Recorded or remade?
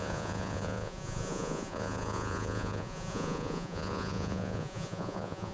remade